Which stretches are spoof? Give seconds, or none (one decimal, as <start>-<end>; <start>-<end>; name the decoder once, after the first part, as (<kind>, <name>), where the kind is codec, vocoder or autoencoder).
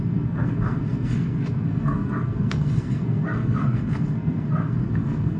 0.0-5.4 (codec, SNAC)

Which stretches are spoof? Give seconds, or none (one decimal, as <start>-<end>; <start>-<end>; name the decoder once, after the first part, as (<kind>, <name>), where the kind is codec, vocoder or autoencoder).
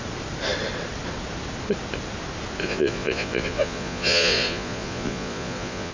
2.6-5.9 (vocoder, Vocos)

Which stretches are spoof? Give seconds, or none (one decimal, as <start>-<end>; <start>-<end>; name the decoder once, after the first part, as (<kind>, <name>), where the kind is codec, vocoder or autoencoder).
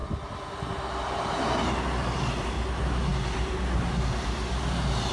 none